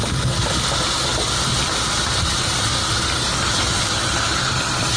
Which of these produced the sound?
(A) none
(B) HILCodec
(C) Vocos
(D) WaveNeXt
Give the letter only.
A